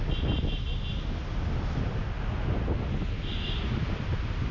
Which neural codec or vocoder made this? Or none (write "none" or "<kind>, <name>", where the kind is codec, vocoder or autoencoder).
none